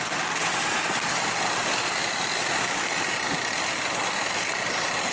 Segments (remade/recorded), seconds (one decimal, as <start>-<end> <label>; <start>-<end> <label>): 0.0-0.6 recorded; 0.6-1.4 remade; 1.4-2.0 recorded; 2.0-5.1 remade